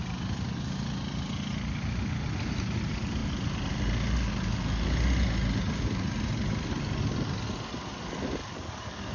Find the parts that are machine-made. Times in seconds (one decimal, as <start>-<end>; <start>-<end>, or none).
3.2-3.9; 8.4-9.1